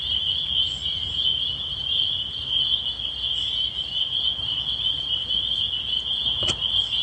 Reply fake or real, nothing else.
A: real